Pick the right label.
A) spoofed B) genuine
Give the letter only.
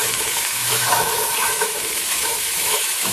A